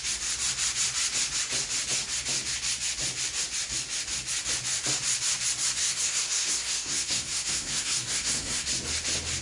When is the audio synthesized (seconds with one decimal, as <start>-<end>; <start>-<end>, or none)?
5.8-8.7